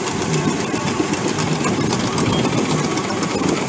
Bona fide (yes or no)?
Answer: yes